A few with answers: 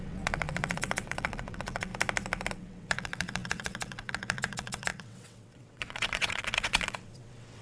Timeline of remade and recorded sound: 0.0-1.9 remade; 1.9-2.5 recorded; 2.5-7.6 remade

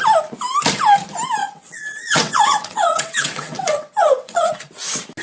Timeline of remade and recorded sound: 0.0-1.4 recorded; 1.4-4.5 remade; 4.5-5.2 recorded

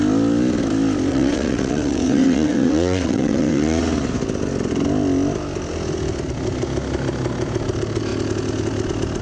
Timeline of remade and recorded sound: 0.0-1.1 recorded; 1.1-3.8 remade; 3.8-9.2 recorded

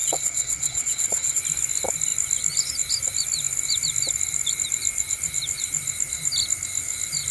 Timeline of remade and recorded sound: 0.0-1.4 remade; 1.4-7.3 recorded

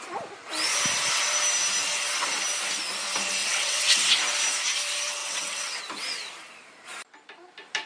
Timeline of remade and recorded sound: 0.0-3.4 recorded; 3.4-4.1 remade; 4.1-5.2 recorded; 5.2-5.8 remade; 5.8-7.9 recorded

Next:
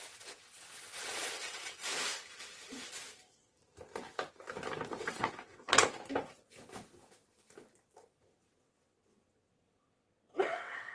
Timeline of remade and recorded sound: 0.0-1.9 remade; 1.9-4.9 recorded; 4.9-5.8 remade; 5.8-8.2 recorded; 8.2-10.9 remade

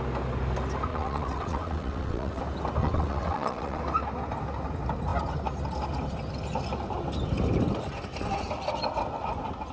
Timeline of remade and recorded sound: 0.0-0.9 recorded; 0.9-2.4 remade; 2.4-2.8 recorded; 2.8-3.8 remade; 3.8-9.7 recorded